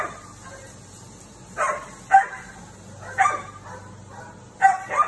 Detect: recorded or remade recorded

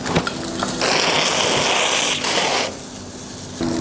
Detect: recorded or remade recorded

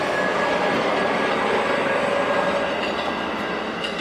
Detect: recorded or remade recorded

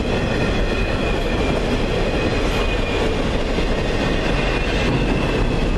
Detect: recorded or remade recorded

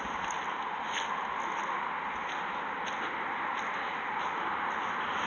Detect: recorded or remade recorded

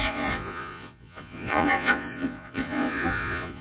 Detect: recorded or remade remade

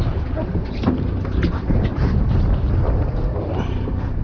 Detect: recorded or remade recorded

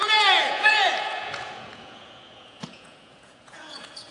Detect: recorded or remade remade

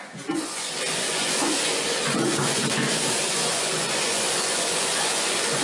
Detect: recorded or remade remade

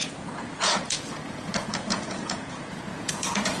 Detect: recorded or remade remade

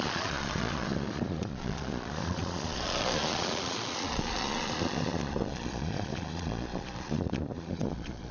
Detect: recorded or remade remade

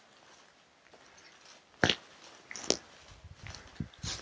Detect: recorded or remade recorded